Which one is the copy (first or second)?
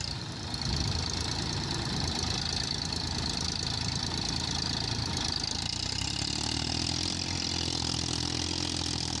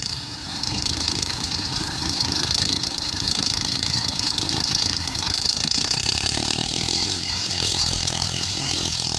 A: second